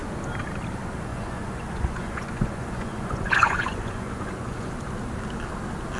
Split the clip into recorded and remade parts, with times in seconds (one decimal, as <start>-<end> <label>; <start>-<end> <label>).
0.0-1.1 recorded; 1.1-4.7 remade; 4.7-6.0 recorded